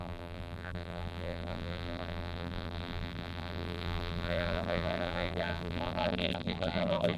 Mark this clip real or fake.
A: fake